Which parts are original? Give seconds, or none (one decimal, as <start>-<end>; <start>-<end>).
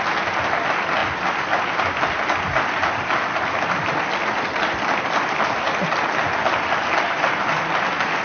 0.0-8.2